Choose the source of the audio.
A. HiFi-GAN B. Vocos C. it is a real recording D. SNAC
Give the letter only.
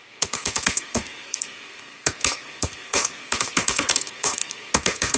D